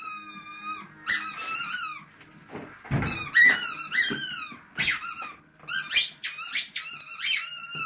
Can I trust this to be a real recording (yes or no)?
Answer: yes